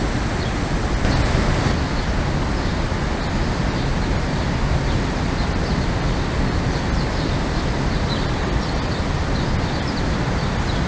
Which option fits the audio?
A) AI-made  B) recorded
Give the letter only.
B